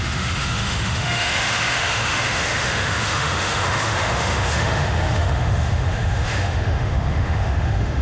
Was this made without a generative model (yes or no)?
no